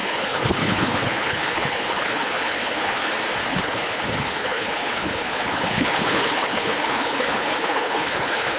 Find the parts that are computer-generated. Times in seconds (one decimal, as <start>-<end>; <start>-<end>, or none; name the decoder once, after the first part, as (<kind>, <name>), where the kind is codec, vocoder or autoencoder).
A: 0.0-3.1 (codec, HILCodec); 3.5-8.6